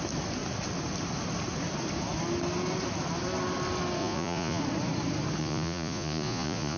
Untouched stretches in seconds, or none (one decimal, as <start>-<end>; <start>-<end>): 0.0-4.0; 4.6-5.4

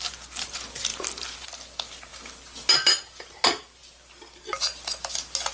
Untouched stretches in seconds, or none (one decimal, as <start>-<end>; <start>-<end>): 0.0-5.5

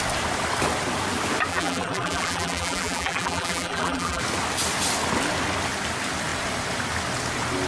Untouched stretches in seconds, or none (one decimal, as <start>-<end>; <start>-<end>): 0.0-1.5; 4.2-7.7

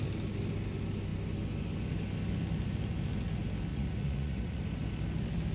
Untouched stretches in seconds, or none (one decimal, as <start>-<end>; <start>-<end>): 0.0-3.7; 4.6-5.5